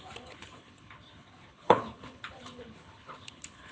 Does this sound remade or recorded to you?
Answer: remade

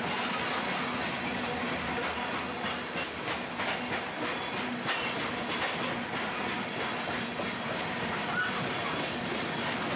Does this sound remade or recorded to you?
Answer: recorded